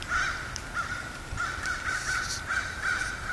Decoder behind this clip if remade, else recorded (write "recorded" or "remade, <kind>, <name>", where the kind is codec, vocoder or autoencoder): remade, vocoder, BigVGAN v2